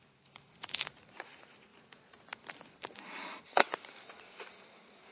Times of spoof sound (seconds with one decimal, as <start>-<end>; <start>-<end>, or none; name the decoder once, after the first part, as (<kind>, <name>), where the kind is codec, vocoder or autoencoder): 0.0-1.7 (vocoder, BigVGAN v2); 3.8-5.1